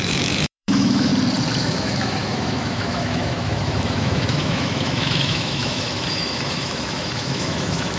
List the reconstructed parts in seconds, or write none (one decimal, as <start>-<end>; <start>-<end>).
0.0-1.1; 1.6-8.0